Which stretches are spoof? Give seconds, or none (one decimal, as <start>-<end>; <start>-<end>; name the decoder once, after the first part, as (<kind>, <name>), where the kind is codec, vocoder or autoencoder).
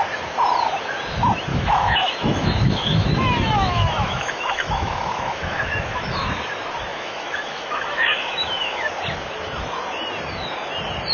1.5-6.3 (autoencoder, DAC-VAE); 6.9-8.9